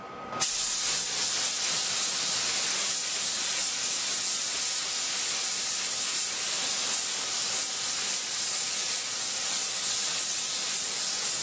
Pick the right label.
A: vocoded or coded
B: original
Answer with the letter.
B